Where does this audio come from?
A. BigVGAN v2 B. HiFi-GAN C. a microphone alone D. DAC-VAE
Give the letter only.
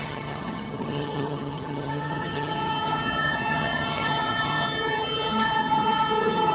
B